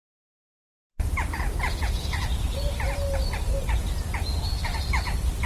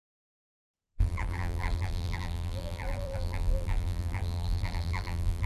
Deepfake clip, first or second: second